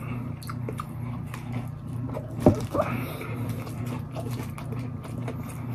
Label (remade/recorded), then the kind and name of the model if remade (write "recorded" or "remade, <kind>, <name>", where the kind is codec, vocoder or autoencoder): recorded